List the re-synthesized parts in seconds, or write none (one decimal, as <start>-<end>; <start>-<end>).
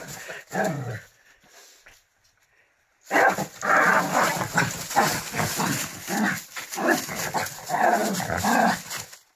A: none